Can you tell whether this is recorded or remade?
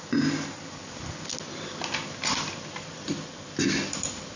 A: recorded